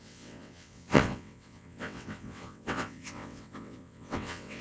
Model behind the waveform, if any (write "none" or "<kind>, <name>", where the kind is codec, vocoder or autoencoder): vocoder, WaveNeXt